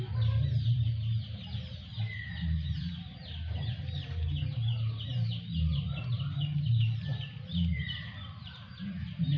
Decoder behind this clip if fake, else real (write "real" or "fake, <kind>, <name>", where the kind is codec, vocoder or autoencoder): real